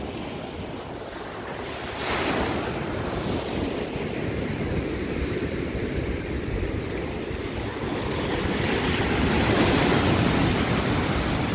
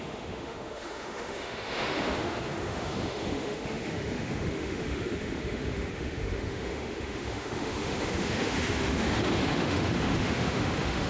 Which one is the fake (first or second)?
second